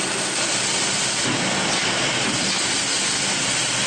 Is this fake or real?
real